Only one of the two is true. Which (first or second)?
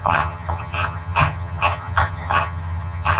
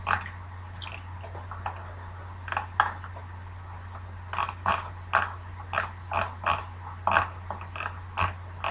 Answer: second